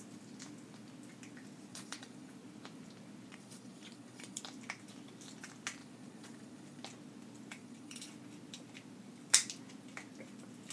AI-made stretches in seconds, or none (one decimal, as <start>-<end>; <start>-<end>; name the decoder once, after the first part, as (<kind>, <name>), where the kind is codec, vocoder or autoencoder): 1.7-2.3 (vocoder, Vocos); 3.3-4.4; 5.8-6.8; 7.6-8.1